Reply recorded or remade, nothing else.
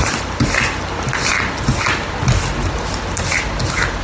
recorded